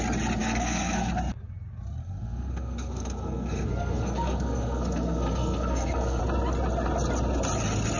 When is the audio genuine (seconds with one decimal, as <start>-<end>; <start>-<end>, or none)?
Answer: 0.0-0.4; 1.1-2.0; 6.2-8.0